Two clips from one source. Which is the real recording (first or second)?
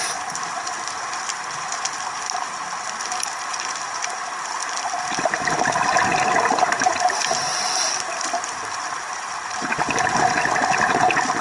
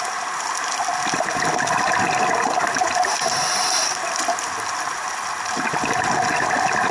second